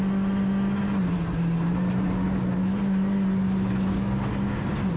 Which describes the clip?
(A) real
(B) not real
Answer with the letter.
A